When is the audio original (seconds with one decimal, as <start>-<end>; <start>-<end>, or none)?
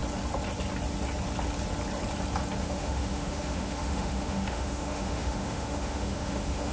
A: 0.0-2.6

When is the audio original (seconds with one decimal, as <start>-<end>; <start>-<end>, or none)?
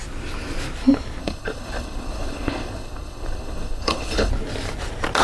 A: 0.0-1.2; 4.3-5.2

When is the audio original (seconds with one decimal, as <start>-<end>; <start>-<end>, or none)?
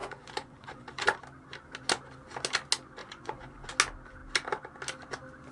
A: 1.2-3.0; 3.7-5.5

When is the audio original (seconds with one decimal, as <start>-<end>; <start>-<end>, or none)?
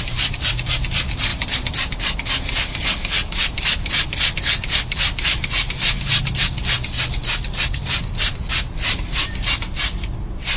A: 0.0-10.6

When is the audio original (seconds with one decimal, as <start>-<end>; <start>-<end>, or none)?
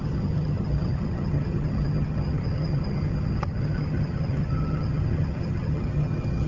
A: none